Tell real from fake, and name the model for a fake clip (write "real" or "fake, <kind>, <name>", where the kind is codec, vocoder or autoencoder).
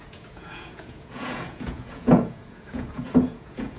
fake, vocoder, Vocos